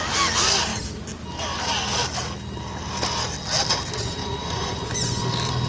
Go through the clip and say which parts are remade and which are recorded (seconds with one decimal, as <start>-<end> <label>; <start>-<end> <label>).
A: 0.0-4.2 recorded; 4.2-5.2 remade; 5.2-5.7 recorded